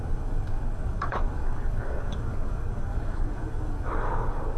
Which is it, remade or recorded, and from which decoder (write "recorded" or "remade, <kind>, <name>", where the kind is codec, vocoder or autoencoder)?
remade, codec, DAC